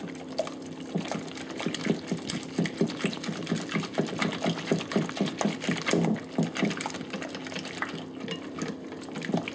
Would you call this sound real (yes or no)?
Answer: yes